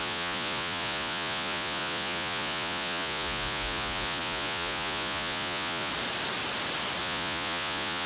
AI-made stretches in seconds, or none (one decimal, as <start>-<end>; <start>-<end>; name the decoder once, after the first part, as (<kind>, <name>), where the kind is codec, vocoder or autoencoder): 0.0-5.9 (vocoder, Vocos); 7.0-8.1